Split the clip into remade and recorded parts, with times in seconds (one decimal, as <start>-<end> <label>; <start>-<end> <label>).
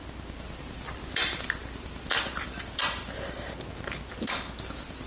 0.0-5.1 recorded